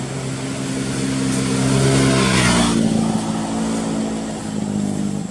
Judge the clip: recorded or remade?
recorded